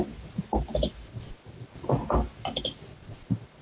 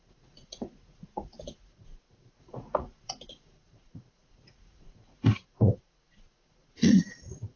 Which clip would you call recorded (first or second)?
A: first